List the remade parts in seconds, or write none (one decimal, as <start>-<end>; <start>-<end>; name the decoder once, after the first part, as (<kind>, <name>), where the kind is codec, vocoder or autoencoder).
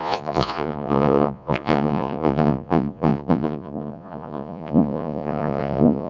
0.0-6.1 (vocoder, Vocos)